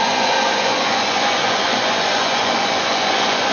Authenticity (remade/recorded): remade